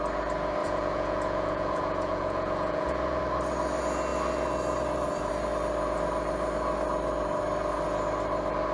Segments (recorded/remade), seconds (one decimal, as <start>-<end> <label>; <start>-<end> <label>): 0.0-0.6 recorded; 0.6-3.2 remade; 3.2-8.7 recorded